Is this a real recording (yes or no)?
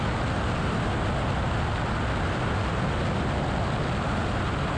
yes